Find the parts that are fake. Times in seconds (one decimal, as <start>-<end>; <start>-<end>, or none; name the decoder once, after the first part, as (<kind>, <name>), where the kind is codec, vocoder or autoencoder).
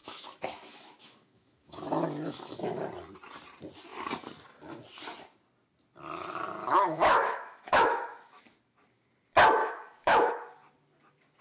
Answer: 0.0-2.8 (autoencoder, DAC-VAE); 6.6-8.4; 9.6-10.3